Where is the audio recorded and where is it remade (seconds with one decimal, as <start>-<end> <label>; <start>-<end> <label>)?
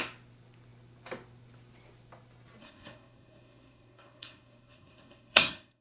0.0-2.6 recorded; 2.6-5.8 remade